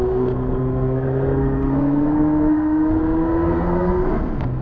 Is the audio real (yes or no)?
no